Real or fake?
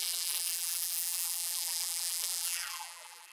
fake